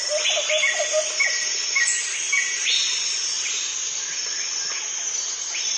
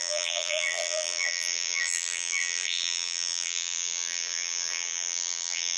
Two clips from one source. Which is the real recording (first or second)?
first